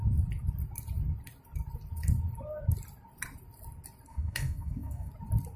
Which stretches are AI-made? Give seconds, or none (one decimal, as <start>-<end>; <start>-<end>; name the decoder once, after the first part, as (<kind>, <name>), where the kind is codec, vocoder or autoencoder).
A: 4.1-5.1 (codec, DAC)

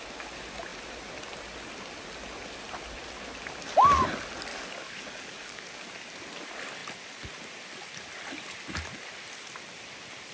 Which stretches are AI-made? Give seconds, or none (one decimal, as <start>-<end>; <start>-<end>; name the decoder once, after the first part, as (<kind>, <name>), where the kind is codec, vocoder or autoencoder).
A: 4.5-5.9 (codec, DAC)

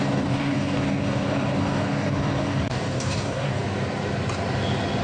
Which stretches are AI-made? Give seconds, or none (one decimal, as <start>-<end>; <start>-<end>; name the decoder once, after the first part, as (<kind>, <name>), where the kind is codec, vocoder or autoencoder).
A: 0.0-3.6 (codec, DAC)

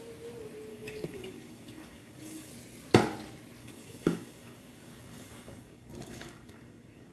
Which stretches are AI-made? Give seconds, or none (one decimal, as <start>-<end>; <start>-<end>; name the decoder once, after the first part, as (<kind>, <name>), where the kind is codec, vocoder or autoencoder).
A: 0.7-2.5 (codec, DAC); 3.6-7.1